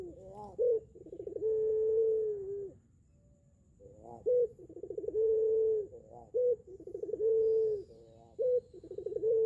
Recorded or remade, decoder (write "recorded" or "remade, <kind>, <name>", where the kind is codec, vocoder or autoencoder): recorded